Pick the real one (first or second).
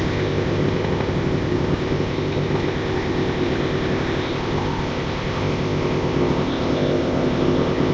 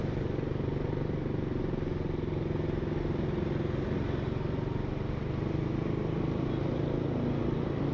second